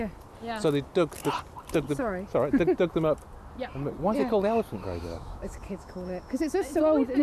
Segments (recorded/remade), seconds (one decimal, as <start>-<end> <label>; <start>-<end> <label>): 0.0-4.7 recorded; 4.7-6.8 remade; 6.8-7.2 recorded